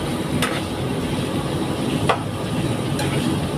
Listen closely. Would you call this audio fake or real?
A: real